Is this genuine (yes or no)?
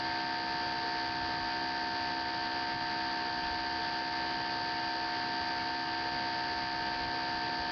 yes